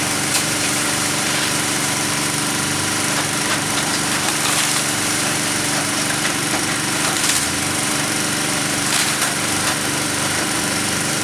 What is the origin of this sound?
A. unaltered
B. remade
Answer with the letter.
B